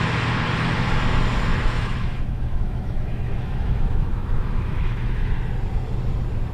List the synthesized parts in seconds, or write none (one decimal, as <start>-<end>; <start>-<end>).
1.5-5.3